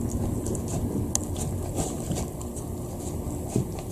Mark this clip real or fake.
real